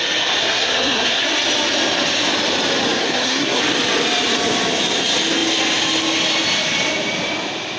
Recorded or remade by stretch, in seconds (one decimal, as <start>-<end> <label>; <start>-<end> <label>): 0.0-0.4 recorded; 0.4-1.2 remade; 1.2-3.0 recorded; 3.0-3.6 remade; 3.6-7.8 recorded